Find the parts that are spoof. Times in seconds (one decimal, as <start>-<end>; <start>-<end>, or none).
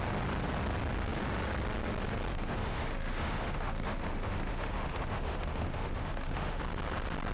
2.3-6.6